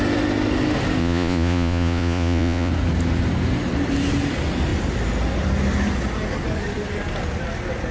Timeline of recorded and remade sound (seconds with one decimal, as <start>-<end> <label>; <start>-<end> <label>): 0.0-1.0 recorded; 1.0-2.7 remade; 2.7-7.9 recorded